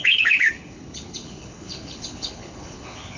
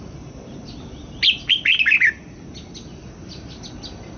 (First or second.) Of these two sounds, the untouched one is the second